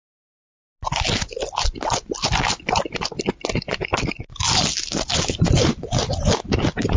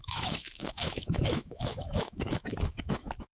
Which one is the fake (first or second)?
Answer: second